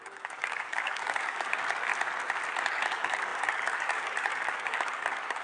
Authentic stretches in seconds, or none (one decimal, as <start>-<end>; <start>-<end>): 1.9-2.6